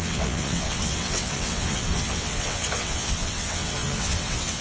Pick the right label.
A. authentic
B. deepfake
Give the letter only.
B